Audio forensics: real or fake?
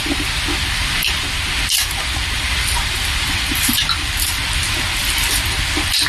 fake